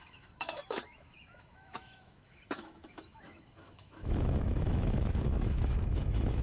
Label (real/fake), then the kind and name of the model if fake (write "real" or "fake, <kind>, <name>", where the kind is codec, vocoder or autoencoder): fake, autoencoder, DAC-VAE